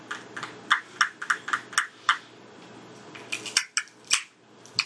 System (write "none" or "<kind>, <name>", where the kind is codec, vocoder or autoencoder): none